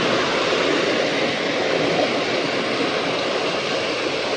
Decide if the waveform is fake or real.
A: real